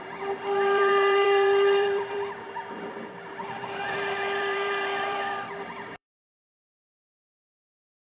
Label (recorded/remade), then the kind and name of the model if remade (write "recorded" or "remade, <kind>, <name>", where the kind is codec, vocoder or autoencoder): remade, vocoder, BigVGAN v2